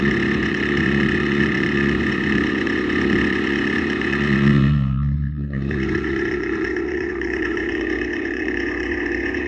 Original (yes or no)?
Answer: no